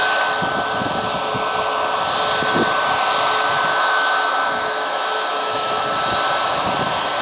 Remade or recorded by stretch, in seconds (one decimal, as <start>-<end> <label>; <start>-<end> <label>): 0.0-3.7 recorded; 3.7-5.8 remade; 5.8-7.2 recorded